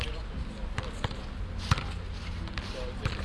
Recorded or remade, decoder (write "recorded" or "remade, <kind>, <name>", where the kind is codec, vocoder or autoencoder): recorded